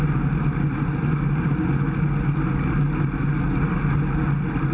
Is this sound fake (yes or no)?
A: no